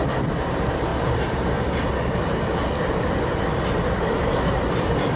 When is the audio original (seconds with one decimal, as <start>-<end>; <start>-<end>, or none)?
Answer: 0.0-5.2

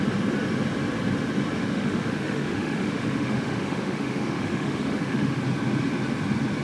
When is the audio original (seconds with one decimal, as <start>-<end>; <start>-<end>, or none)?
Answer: 0.0-1.6; 5.4-6.6

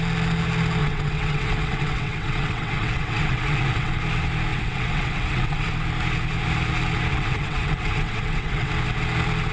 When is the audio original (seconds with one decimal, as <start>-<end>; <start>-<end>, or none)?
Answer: 0.0-0.8; 3.9-4.5; 5.7-7.1; 8.7-9.5

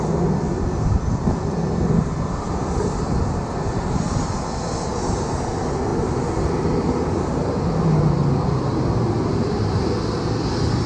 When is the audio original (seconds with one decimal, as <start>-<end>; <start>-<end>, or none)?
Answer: 0.0-10.9

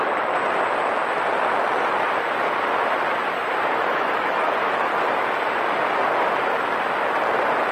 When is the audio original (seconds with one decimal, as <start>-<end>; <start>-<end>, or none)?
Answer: 0.4-3.7; 4.9-7.7

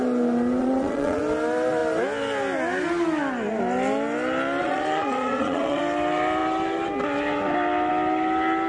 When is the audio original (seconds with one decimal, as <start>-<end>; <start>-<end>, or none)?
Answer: 0.0-0.6; 1.2-4.6; 5.8-8.7

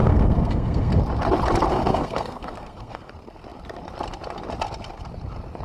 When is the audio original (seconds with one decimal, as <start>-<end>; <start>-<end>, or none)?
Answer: 0.9-1.7; 3.1-5.6